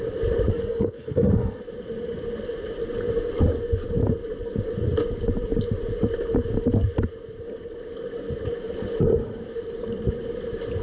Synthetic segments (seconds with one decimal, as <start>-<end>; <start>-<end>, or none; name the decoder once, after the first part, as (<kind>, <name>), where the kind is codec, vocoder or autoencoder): 0.5-1.6 (codec, SNAC)